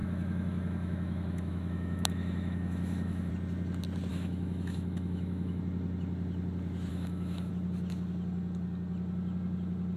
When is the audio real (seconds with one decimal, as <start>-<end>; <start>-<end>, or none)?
3.3-4.1; 5.6-6.9; 7.5-10.0